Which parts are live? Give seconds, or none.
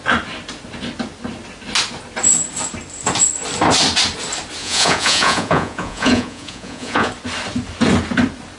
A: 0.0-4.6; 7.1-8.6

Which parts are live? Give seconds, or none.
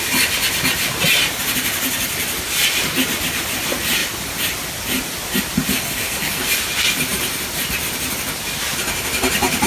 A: 0.0-5.7; 6.5-9.7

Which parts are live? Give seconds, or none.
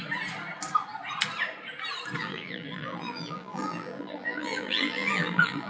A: 0.0-2.2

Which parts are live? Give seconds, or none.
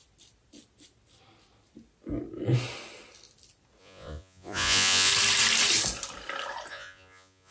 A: 0.0-3.8; 5.1-6.7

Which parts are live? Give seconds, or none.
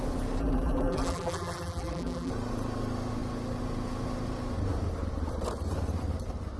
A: 0.0-0.4; 2.3-6.6